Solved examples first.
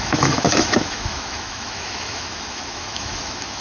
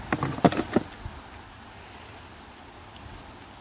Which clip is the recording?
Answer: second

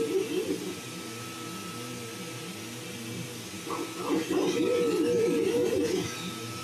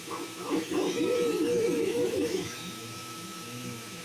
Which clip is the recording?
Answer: first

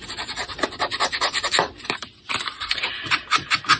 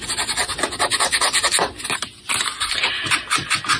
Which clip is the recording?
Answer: second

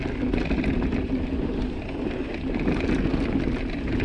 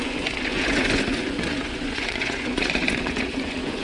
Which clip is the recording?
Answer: first